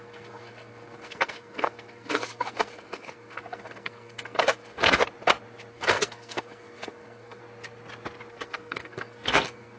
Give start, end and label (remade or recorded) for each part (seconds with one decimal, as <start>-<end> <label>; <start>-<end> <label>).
0.0-5.0 remade; 5.0-5.7 recorded; 5.7-7.4 remade; 7.4-8.3 recorded; 8.3-9.8 remade